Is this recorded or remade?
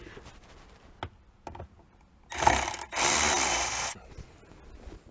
recorded